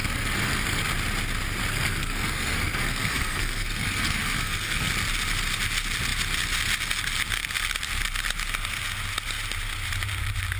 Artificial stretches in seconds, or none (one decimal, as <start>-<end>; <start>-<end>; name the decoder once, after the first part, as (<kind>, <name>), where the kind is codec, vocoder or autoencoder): 0.0-0.8 (codec, SNAC); 1.7-4.9